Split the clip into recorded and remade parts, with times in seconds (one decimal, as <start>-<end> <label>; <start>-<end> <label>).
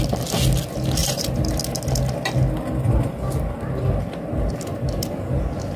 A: 0.0-1.0 recorded; 1.0-1.6 remade; 1.6-4.7 recorded; 4.7-5.3 remade; 5.3-5.8 recorded